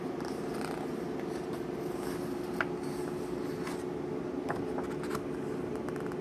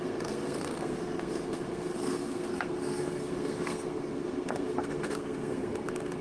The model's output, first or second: second